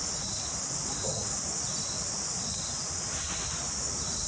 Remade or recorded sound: recorded